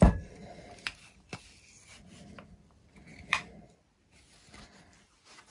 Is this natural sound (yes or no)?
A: no